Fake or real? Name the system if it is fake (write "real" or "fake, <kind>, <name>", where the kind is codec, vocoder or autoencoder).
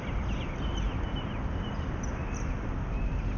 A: real